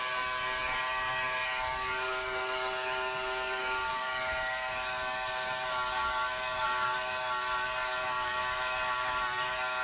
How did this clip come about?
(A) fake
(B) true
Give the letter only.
A